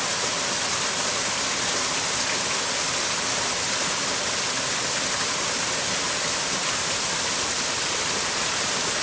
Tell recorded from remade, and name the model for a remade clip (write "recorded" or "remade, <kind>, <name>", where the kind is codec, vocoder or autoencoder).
recorded